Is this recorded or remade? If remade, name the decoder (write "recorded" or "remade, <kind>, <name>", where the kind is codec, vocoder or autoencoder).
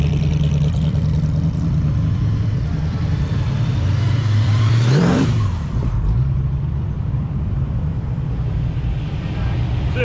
remade, vocoder, BigVGAN v2